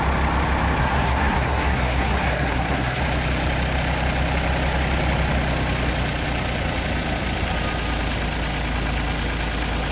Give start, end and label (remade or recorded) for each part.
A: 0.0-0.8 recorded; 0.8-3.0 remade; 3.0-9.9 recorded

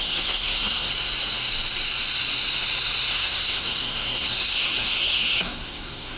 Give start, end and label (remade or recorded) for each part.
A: 0.0-0.9 remade; 0.9-3.1 recorded; 3.1-6.2 remade

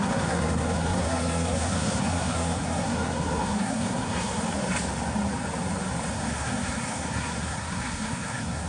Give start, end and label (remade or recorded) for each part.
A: 0.0-4.4 remade; 4.4-6.1 recorded; 6.1-8.7 remade

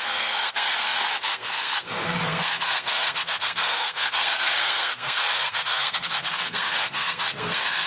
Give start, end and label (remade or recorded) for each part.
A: 0.0-7.9 remade

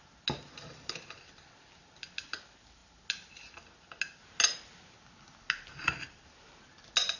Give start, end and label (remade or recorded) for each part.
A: 0.0-7.2 recorded

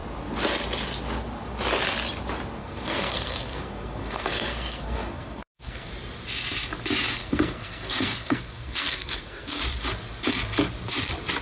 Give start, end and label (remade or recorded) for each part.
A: 0.0-2.6 recorded; 2.6-5.9 remade; 5.9-7.2 recorded; 7.2-9.6 remade; 9.6-11.4 recorded

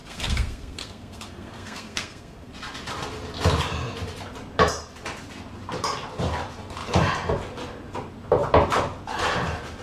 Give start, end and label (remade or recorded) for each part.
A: 0.0-2.5 remade; 2.5-9.8 recorded